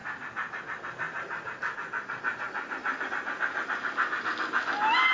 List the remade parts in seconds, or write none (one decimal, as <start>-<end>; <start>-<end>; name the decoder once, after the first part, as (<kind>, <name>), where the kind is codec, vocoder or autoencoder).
none